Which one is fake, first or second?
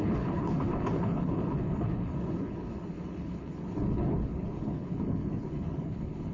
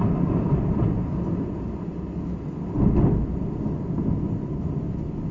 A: first